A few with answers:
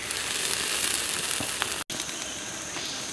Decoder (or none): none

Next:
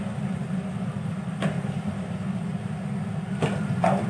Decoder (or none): none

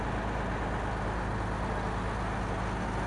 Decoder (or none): none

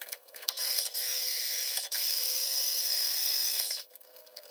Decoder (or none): codec, SNAC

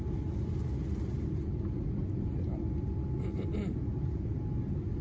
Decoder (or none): none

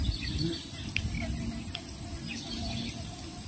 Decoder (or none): none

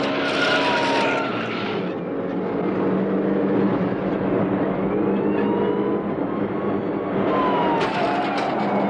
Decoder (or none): none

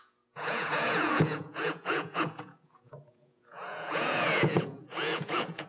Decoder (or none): vocoder, Vocos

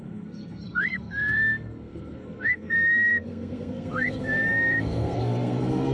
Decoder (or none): codec, SNAC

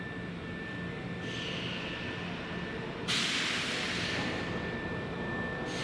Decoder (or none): none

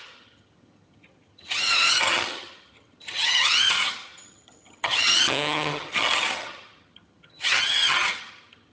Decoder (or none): vocoder, HiFi-GAN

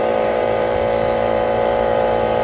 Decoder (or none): vocoder, BigVGAN v2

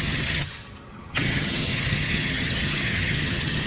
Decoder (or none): vocoder, HiFi-GAN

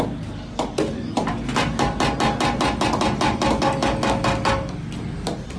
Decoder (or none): none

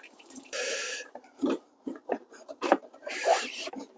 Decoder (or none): vocoder, BigVGAN v2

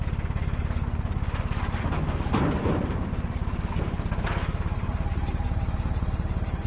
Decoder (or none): vocoder, BigVGAN v2